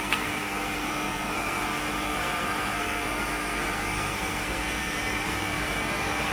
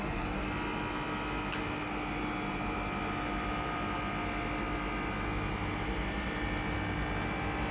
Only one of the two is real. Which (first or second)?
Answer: second